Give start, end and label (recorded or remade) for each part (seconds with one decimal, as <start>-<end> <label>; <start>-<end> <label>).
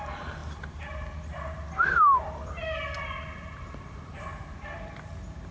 0.0-5.5 recorded